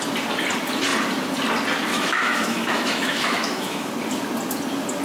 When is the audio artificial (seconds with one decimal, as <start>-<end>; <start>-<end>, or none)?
1.9-3.9